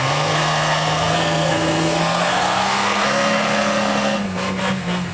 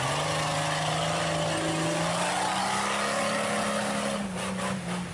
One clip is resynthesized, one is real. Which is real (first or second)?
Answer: second